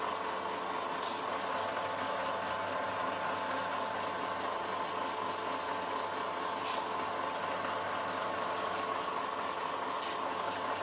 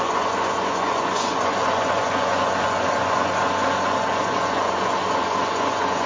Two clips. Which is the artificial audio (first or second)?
second